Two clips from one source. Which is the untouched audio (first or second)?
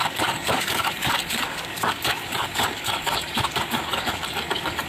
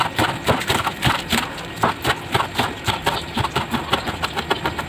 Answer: second